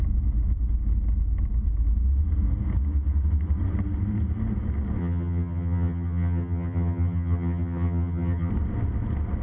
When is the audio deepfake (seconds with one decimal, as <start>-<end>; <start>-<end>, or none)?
5.0-8.5